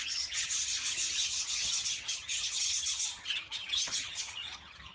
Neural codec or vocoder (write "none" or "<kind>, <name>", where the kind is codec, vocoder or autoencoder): vocoder, HiFi-GAN